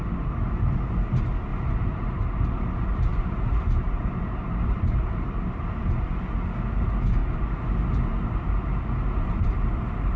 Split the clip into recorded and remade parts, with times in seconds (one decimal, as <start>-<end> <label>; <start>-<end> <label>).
0.0-1.5 recorded; 1.5-2.2 remade; 2.2-3.1 recorded; 3.1-5.6 remade; 5.6-10.2 recorded

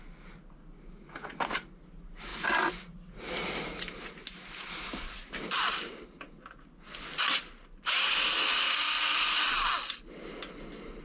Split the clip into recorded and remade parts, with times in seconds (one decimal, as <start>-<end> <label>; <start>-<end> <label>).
0.0-11.0 recorded

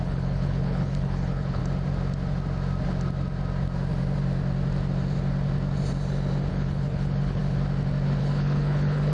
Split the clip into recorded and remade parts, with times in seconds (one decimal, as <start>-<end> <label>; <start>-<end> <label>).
0.0-1.6 remade; 1.6-6.5 recorded; 6.5-7.4 remade; 7.4-8.2 recorded; 8.2-9.1 remade

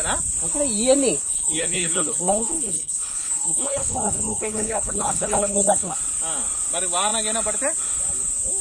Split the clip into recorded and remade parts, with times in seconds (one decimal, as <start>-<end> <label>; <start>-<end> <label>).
0.0-1.2 recorded; 1.2-6.0 remade; 6.0-8.6 recorded